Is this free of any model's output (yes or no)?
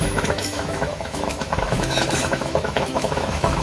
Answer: no